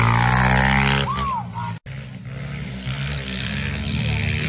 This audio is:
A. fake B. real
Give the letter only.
B